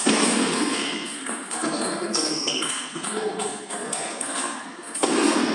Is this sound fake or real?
fake